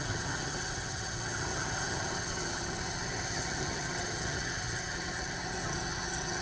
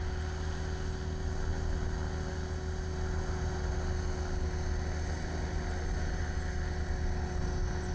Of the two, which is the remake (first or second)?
first